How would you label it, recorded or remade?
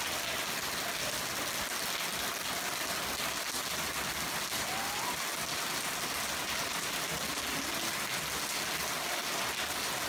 recorded